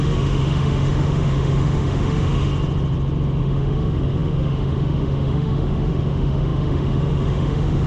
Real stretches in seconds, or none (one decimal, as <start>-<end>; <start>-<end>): 2.5-3.4